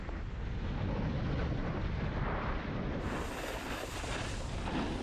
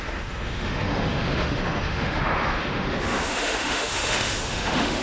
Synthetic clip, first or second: second